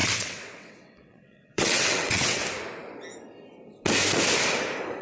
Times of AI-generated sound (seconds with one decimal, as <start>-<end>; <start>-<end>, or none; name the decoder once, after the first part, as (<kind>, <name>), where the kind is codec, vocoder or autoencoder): 0.0-2.4 (vocoder, WaveNeXt)